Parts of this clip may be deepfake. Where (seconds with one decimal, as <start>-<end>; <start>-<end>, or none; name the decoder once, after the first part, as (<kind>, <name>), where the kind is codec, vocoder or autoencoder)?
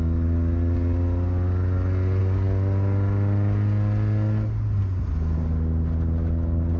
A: none